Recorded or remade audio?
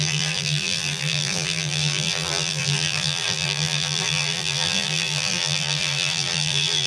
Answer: remade